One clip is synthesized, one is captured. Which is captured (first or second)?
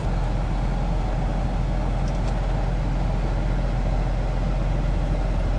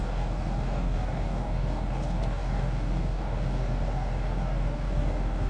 first